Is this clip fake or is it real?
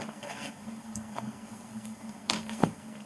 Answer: fake